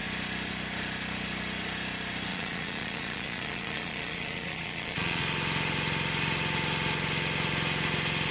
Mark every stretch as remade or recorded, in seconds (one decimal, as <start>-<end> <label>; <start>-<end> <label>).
0.0-2.3 recorded; 2.3-5.2 remade; 5.2-8.3 recorded